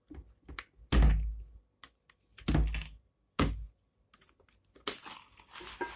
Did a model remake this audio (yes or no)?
no